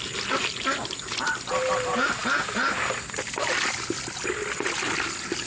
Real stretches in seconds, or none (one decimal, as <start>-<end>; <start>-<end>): 0.0-5.5